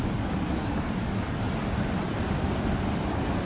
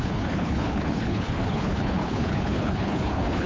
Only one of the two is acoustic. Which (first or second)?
first